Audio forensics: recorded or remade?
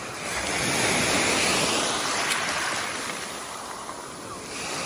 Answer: recorded